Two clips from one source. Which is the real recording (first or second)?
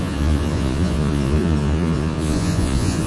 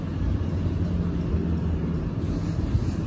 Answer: second